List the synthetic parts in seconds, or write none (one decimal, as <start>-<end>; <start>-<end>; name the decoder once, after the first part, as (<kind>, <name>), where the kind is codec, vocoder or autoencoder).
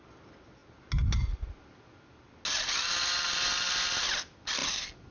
none